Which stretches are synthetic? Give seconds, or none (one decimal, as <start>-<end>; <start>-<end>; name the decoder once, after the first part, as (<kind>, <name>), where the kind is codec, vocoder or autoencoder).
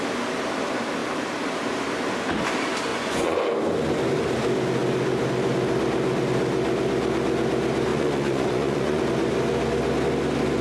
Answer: 2.9-3.4 (vocoder, Vocos); 7.9-9.0